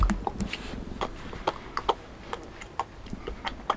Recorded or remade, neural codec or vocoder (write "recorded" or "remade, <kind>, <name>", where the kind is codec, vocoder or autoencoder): recorded